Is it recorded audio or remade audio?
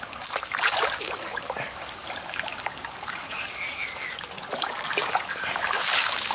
remade